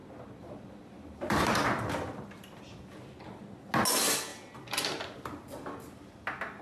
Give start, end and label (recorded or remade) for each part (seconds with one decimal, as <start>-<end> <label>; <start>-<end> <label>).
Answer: 0.0-2.6 remade; 2.6-4.3 recorded; 4.3-6.0 remade; 6.0-6.6 recorded